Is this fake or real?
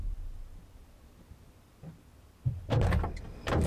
real